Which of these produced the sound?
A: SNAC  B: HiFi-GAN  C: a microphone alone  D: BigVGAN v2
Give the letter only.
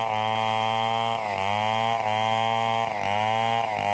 C